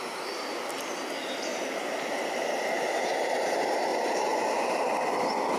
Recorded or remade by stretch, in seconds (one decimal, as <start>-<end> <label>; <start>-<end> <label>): 0.0-1.5 recorded; 1.5-3.5 remade; 3.5-3.9 recorded; 3.9-4.4 remade; 4.4-5.6 recorded